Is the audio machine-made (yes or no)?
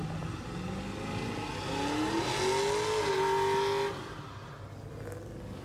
no